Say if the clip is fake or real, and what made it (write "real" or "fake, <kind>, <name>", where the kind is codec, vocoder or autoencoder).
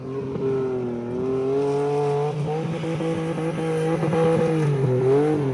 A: real